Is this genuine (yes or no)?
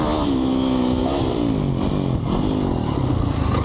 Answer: yes